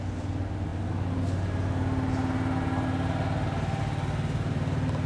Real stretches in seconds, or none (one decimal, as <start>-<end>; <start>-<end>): 0.0-5.1